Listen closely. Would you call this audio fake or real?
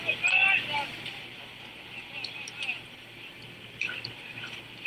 real